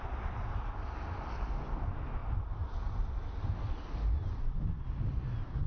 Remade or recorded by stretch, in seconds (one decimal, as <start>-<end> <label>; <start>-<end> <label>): 0.0-5.7 recorded